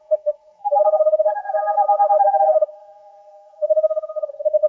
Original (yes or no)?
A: no